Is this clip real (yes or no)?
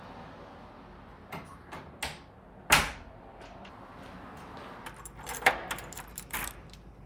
yes